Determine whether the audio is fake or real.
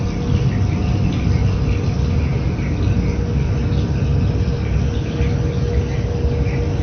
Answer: real